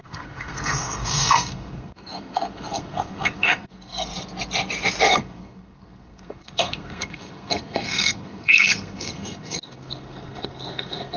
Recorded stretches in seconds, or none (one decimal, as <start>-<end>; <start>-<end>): 4.1-5.1